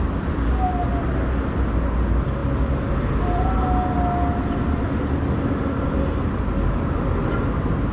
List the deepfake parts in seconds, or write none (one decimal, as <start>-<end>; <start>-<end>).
none